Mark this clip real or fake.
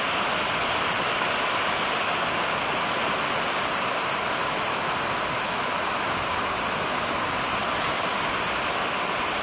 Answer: real